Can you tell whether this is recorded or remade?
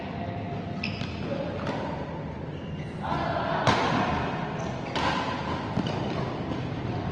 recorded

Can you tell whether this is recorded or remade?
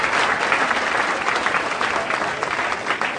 recorded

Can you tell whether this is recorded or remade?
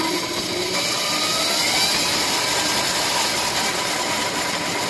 recorded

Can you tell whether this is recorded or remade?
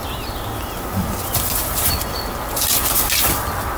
recorded